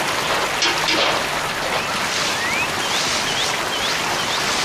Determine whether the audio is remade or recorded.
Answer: recorded